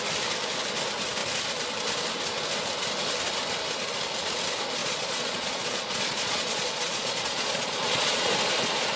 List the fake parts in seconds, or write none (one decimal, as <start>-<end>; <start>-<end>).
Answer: 4.8-8.3